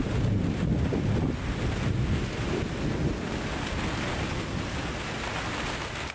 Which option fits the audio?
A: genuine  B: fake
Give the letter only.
A